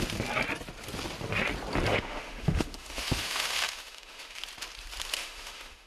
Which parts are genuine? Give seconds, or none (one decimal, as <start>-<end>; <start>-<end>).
0.0-1.9; 4.4-5.2